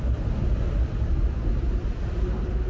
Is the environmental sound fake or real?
real